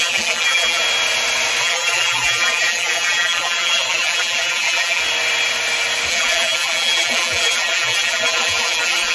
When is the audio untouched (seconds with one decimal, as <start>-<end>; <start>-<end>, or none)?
0.8-1.6; 5.0-6.1